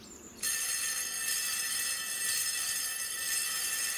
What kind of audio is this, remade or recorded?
remade